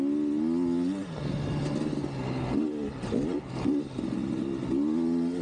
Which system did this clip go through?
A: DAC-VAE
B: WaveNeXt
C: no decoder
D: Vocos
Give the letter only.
C